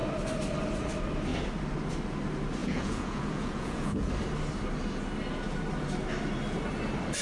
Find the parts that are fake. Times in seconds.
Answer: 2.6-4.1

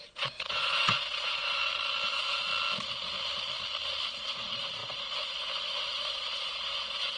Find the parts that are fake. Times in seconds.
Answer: 0.0-1.6; 2.1-2.5; 4.0-7.2